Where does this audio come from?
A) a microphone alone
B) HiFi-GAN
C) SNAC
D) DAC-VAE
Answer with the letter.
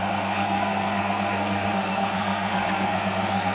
C